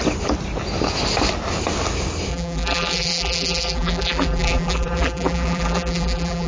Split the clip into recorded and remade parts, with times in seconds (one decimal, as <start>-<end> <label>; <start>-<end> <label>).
0.0-2.3 recorded; 2.3-6.5 remade